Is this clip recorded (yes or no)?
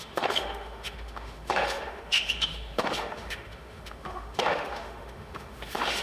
no